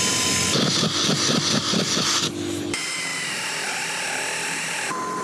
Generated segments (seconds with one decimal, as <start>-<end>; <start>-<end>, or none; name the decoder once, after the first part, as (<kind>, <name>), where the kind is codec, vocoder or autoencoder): none